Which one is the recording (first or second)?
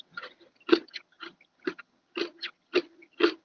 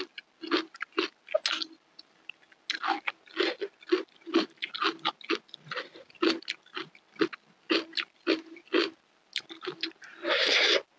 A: second